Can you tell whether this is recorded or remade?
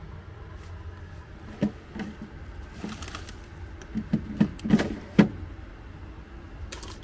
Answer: recorded